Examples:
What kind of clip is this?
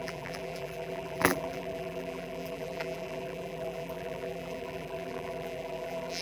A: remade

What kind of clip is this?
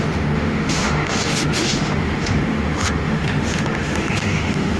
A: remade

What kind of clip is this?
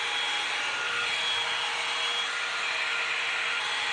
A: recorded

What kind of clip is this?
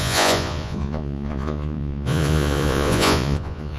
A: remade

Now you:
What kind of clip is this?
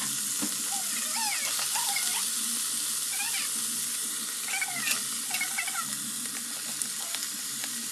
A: recorded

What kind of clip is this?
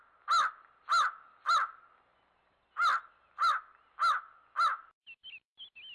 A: recorded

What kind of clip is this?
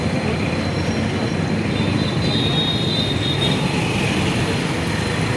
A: recorded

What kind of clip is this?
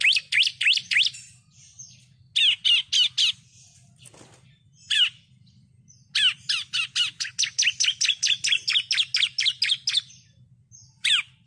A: recorded